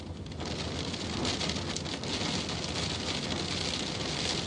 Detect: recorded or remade recorded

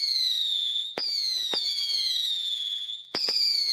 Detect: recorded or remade remade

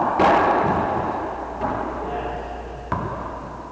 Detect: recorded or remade recorded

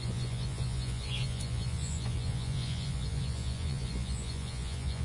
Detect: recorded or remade remade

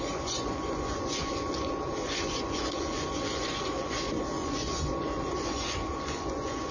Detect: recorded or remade remade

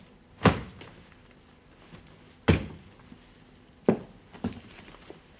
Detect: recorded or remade recorded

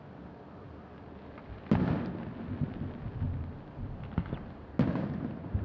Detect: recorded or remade recorded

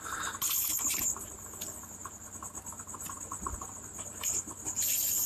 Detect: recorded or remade recorded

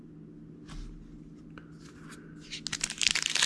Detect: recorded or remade recorded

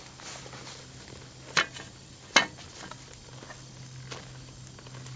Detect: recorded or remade recorded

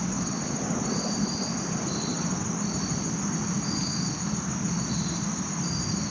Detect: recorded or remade recorded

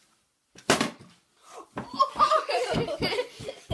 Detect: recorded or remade recorded